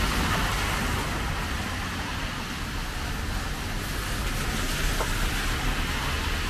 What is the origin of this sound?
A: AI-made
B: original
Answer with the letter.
B